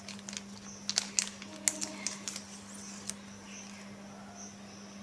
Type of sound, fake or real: real